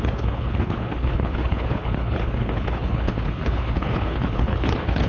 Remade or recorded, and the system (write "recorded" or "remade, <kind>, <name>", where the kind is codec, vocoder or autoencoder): remade, codec, HILCodec